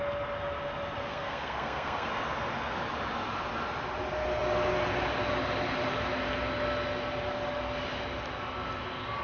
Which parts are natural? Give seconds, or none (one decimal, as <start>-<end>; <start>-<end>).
0.0-1.1; 2.1-9.2

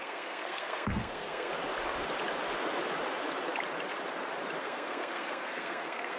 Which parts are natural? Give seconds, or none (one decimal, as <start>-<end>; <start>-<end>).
1.5-4.6

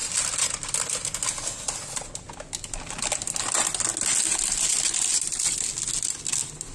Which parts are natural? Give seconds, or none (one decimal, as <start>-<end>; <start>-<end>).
0.0-6.7

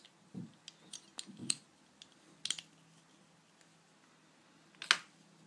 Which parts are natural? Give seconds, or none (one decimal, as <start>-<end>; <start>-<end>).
0.0-5.5